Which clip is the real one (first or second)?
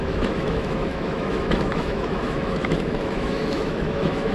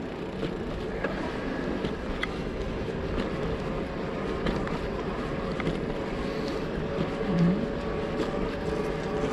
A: second